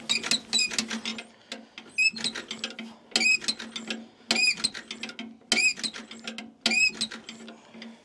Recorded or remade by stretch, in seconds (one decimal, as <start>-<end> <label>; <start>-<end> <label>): 0.0-8.0 recorded